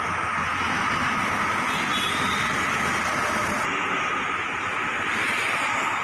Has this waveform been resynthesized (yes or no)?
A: no